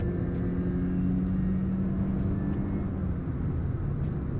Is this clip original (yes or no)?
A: yes